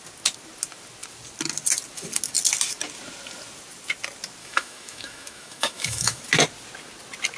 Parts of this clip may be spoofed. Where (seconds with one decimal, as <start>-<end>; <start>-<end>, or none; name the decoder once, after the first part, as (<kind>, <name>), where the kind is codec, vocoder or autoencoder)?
4.4-6.2 (autoencoder, DAC-VAE)